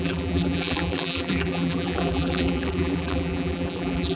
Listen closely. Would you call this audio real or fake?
fake